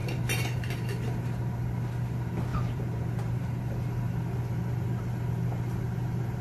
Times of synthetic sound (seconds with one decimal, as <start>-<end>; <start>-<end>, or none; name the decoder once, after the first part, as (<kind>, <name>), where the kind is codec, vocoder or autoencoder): 0.0-0.7 (vocoder, BigVGAN v2); 2.5-3.6